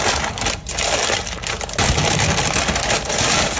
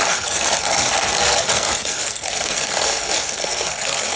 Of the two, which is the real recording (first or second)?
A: first